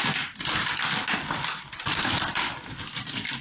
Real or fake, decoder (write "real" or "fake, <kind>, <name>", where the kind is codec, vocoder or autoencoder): real